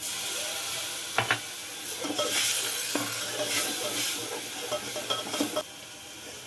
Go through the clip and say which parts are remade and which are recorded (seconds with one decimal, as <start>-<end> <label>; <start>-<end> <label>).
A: 0.0-2.5 recorded; 2.5-3.3 remade; 3.3-6.5 recorded